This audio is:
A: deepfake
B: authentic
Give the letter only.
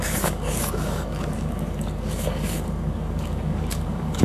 A